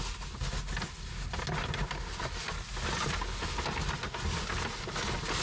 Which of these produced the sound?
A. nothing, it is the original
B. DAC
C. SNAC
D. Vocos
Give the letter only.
A